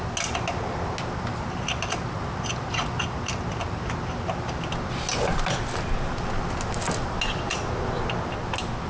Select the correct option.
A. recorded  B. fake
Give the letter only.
A